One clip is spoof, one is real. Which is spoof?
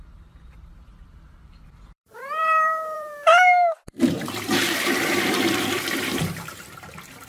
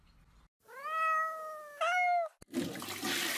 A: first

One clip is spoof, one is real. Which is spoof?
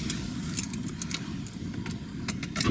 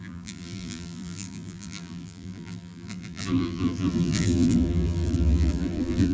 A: second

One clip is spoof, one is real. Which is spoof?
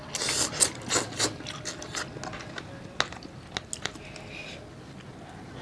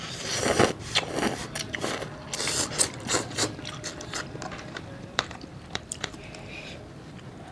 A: second